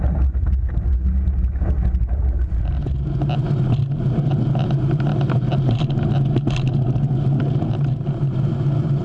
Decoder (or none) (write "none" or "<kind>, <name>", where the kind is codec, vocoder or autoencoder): none